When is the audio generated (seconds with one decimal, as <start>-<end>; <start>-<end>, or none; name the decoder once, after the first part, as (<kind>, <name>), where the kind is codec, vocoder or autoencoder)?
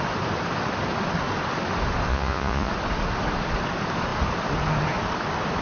2.1-2.7 (vocoder, Vocos)